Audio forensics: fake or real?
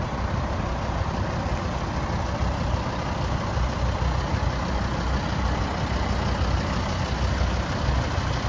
real